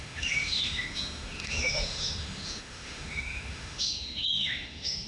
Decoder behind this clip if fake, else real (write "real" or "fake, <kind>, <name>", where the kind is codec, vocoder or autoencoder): fake, autoencoder, DAC-VAE